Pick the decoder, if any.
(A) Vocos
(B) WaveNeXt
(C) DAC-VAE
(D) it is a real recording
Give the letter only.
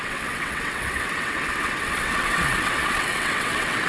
B